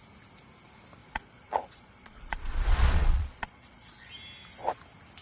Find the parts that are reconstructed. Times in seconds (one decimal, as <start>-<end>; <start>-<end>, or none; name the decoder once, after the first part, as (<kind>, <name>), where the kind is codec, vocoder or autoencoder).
1.0-4.1 (vocoder, Vocos)